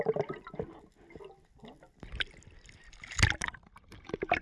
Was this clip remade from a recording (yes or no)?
no